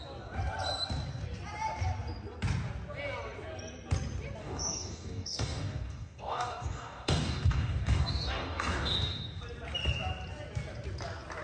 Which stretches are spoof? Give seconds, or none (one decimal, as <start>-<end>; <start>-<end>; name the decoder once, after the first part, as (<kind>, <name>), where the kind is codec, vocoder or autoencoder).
4.4-9.4 (codec, DAC)